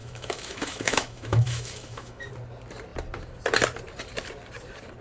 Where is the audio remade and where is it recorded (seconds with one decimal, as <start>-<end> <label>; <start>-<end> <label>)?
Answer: 0.0-2.3 remade; 2.3-5.0 recorded